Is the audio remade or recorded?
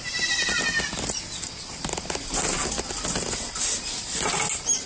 recorded